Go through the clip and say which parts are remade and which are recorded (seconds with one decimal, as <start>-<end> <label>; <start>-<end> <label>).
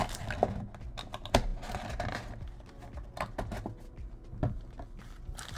0.0-5.6 recorded